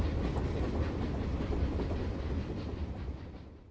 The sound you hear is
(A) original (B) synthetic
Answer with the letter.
A